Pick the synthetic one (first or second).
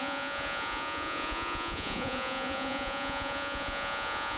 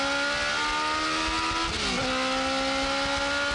first